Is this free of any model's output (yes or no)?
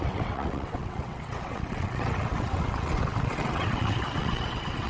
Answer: no